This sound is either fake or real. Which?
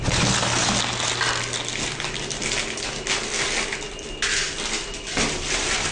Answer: real